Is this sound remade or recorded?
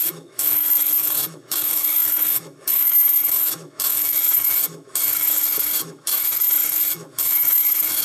remade